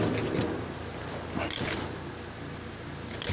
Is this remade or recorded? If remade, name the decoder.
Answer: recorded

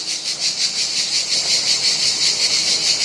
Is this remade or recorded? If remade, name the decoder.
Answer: recorded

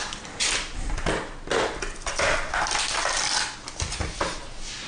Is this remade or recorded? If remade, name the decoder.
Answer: recorded